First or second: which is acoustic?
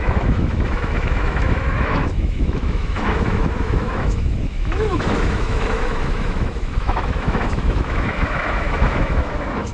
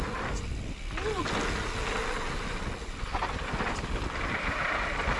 second